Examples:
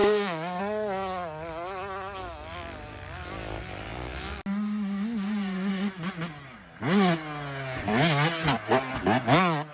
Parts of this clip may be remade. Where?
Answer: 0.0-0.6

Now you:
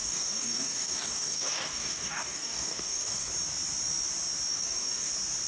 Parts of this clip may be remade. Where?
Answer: 0.0-3.3; 4.5-5.1

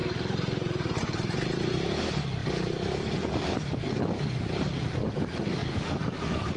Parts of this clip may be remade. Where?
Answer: 5.6-6.6

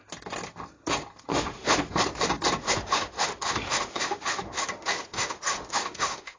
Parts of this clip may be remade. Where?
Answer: 1.3-1.9; 2.6-6.4